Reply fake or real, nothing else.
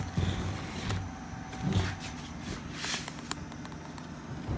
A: real